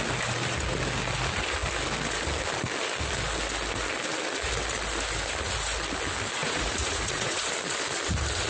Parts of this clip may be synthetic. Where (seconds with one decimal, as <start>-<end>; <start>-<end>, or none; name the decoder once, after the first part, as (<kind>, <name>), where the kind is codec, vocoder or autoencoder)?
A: 6.4-7.5 (vocoder, Vocos)